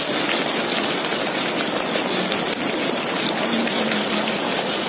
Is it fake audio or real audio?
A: real